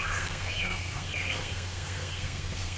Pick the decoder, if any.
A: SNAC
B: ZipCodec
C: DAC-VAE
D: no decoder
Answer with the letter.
A